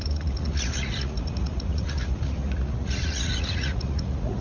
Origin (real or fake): fake